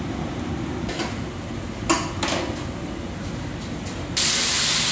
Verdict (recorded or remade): recorded